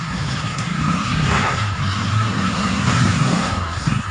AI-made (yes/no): yes